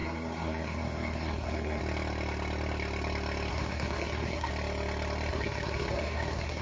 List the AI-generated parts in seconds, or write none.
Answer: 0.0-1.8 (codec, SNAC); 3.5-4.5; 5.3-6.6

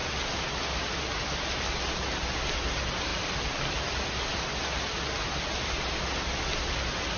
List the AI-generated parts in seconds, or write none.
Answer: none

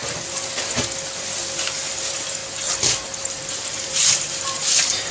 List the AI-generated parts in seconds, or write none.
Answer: 2.0-2.4 (vocoder, BigVGAN v2); 3.2-5.1